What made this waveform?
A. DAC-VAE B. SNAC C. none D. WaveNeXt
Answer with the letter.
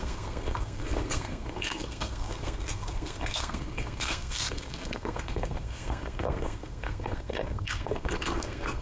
B